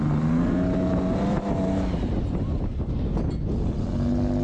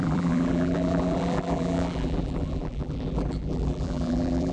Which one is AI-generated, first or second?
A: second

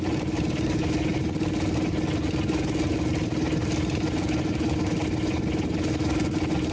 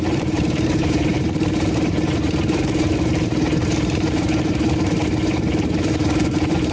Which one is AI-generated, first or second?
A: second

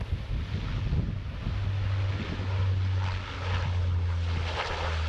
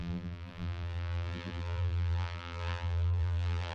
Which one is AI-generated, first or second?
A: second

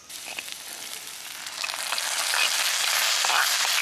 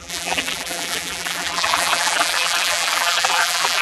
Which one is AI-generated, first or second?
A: second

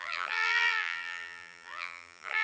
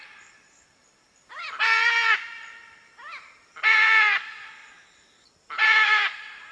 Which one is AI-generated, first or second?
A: first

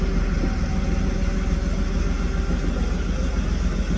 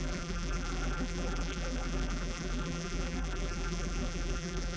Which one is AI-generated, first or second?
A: second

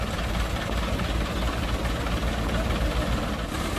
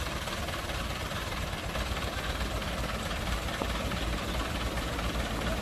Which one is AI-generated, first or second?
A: second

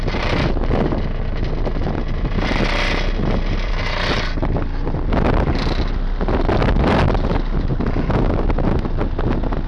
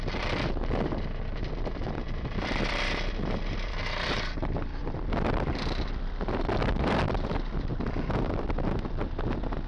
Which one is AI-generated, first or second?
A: second